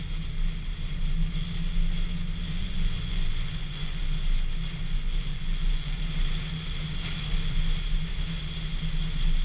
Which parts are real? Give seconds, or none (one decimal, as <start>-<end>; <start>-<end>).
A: 0.0-2.6; 4.0-5.3; 6.0-9.4